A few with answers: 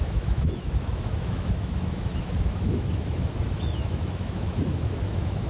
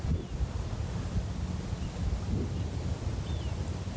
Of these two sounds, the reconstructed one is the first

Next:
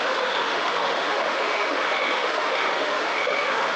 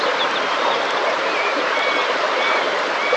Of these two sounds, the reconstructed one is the first